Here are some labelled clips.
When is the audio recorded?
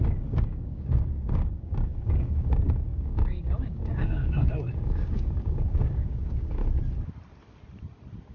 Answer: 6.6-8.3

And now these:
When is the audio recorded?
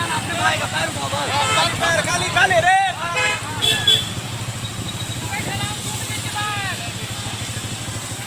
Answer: 0.0-1.1; 1.6-8.3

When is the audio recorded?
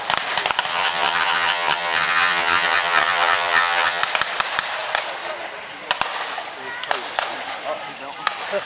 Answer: 0.0-0.7; 4.0-8.7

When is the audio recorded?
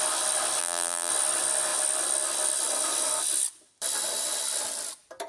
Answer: 0.0-0.6; 1.1-5.3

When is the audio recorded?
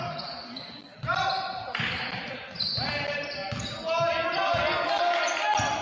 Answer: 0.0-5.8